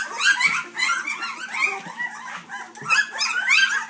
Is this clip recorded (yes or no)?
yes